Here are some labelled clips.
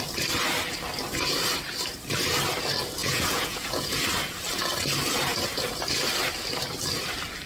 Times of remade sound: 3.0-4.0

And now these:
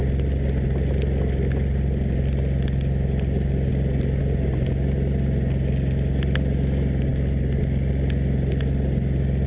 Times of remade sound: none

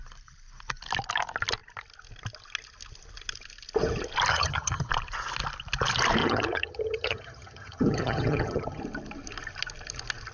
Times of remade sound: 4.3-4.9; 6.2-8.8